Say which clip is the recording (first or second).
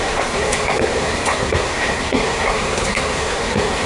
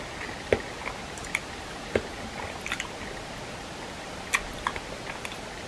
second